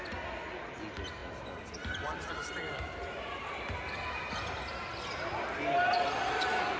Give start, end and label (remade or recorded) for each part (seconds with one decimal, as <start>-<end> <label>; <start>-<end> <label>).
0.0-6.8 recorded